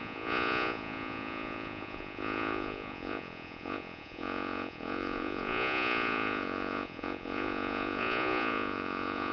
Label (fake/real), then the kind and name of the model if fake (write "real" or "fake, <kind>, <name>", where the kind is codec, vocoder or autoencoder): fake, vocoder, Vocos